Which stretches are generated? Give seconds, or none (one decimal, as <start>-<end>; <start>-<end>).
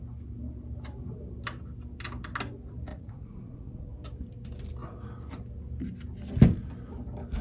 2.9-3.9